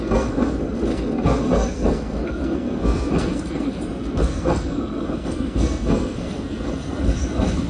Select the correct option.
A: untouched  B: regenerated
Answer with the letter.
B